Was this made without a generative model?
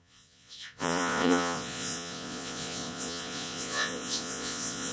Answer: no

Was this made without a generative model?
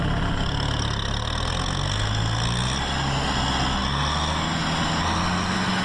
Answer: yes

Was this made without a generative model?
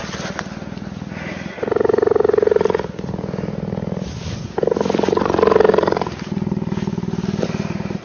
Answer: yes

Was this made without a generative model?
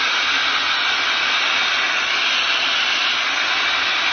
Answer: yes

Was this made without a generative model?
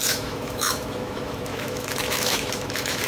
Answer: no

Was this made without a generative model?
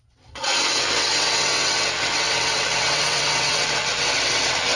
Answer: no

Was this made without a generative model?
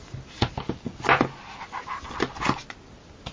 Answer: yes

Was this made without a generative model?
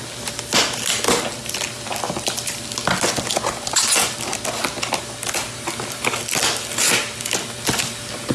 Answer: yes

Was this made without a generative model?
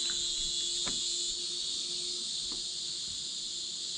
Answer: yes